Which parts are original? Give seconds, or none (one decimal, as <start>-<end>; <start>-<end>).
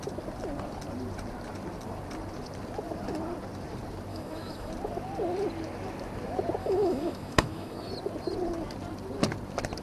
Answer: 0.0-4.1; 4.7-6.6; 7.9-9.8